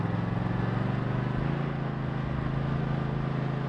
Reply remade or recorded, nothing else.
recorded